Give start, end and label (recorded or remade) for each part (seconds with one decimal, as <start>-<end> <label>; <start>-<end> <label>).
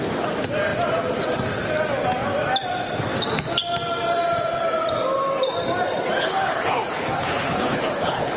0.0-6.2 recorded; 6.2-8.4 remade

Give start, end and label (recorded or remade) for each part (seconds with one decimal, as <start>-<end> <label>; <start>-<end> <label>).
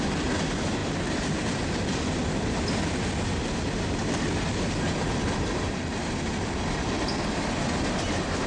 0.0-8.5 recorded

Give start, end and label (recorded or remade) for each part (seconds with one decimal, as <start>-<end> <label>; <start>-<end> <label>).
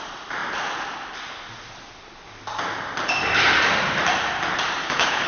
0.0-4.8 recorded; 4.8-5.3 remade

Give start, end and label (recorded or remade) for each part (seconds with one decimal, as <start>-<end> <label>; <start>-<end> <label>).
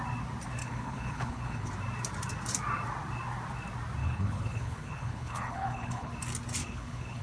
0.0-0.6 recorded; 0.6-1.7 remade; 1.7-4.0 recorded; 4.0-6.1 remade; 6.1-6.6 recorded; 6.6-7.2 remade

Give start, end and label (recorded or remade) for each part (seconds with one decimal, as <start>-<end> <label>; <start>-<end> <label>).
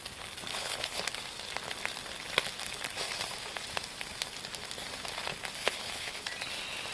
0.0-0.5 recorded; 0.5-1.0 remade; 1.0-5.6 recorded; 5.6-6.2 remade; 6.2-6.9 recorded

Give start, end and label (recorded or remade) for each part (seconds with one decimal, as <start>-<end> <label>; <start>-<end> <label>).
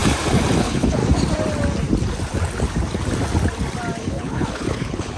0.0-0.6 recorded; 0.6-1.0 remade; 1.0-4.0 recorded; 4.0-5.2 remade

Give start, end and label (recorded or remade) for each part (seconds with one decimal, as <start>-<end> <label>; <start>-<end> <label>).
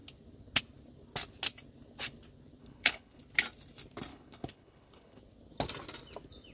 0.0-2.6 recorded; 2.6-3.2 remade; 3.2-4.1 recorded; 4.1-5.2 remade; 5.2-6.5 recorded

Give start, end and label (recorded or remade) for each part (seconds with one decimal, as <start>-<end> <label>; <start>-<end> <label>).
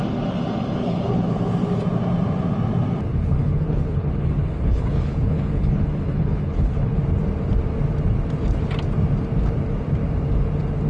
0.0-0.8 recorded; 0.8-1.4 remade; 1.4-3.1 recorded; 3.1-7.0 remade; 7.0-10.9 recorded